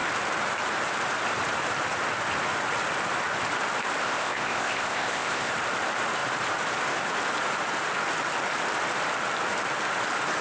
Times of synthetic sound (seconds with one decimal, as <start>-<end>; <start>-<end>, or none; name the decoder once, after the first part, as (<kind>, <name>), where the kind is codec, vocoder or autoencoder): 4.0-5.5 (codec, ZipCodec)